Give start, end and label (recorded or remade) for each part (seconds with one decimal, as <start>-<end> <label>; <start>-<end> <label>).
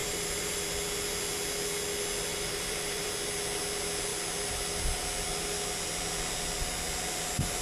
0.0-0.6 remade; 0.6-2.3 recorded; 2.3-3.1 remade; 3.1-7.6 recorded